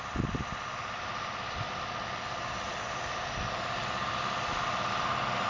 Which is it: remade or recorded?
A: recorded